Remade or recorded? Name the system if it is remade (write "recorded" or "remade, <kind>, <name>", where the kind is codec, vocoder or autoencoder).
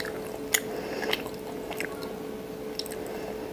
recorded